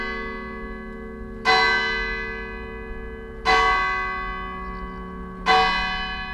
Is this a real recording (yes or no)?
yes